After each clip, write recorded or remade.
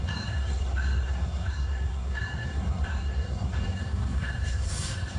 remade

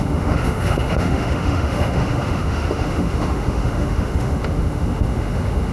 remade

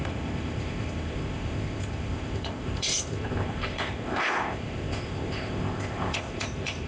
remade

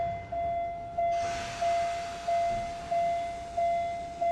recorded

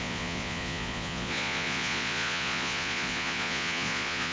remade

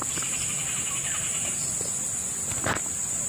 recorded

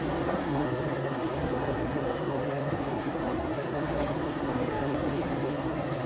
remade